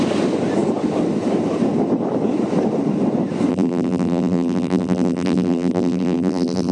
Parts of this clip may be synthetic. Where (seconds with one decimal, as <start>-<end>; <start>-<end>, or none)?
3.5-6.7